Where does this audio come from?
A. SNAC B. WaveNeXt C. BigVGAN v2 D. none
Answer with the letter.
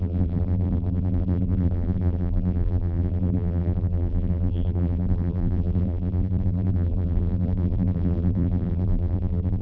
C